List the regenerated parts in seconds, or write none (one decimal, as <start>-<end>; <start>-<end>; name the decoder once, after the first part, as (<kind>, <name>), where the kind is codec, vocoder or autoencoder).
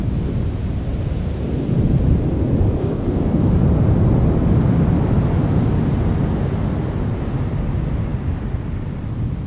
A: 2.8-3.5 (codec, DAC)